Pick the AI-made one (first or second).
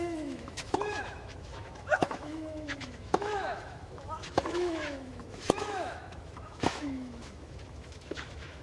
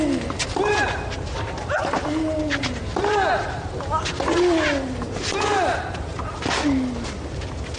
first